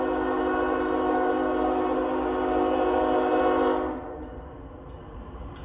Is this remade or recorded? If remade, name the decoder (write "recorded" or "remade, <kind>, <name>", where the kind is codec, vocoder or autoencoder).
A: recorded